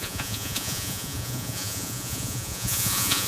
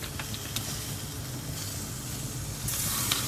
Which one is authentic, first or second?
second